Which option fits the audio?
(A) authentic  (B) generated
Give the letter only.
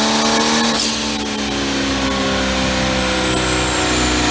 A